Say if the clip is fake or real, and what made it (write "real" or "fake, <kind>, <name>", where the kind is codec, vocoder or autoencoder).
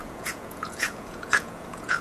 fake, vocoder, Vocos